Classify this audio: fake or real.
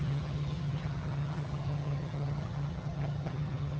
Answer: fake